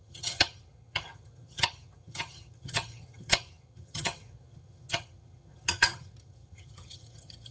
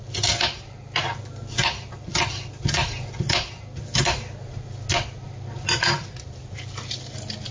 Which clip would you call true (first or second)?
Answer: second